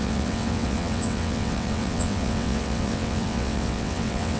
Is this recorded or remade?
remade